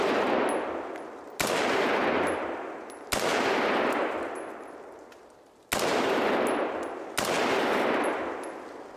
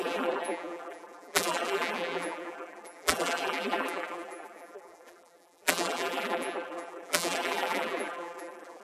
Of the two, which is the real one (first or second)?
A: first